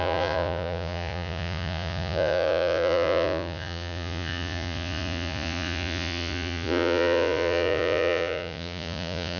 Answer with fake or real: fake